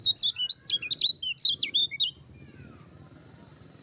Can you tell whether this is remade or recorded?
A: recorded